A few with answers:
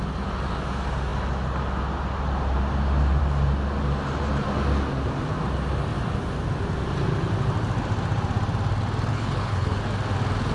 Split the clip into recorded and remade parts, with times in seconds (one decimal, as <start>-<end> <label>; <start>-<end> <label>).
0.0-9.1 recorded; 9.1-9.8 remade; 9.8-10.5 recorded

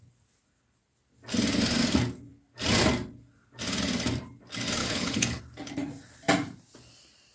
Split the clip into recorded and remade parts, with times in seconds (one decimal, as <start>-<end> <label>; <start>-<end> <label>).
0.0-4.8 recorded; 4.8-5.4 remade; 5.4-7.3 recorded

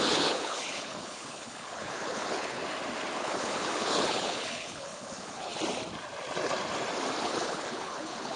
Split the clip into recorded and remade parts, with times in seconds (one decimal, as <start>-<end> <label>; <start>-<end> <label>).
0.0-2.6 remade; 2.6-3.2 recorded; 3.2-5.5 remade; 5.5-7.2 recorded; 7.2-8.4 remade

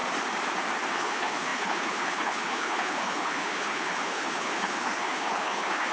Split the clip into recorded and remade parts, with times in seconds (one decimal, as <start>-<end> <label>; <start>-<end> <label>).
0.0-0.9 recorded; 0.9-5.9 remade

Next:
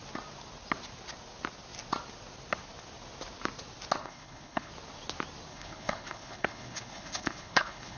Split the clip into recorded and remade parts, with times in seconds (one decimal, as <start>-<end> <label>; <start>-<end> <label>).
0.0-4.0 recorded; 4.0-4.7 remade; 4.7-5.5 recorded; 5.5-8.0 remade

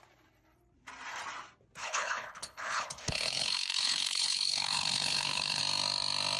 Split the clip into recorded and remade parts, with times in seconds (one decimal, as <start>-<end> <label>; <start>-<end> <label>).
0.0-1.8 recorded; 1.8-5.6 remade; 5.6-6.4 recorded

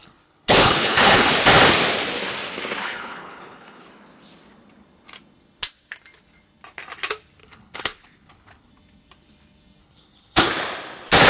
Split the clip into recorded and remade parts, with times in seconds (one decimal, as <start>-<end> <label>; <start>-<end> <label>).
0.0-1.3 remade; 1.3-2.8 recorded; 2.8-3.9 remade; 3.9-7.4 recorded; 7.4-8.7 remade; 8.7-9.8 recorded; 9.8-10.5 remade; 10.5-11.3 recorded